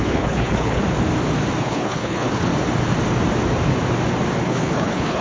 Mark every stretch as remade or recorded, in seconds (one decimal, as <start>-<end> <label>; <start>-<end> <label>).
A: 0.0-0.8 remade; 0.8-1.6 recorded; 1.6-2.5 remade; 2.5-4.4 recorded; 4.4-5.2 remade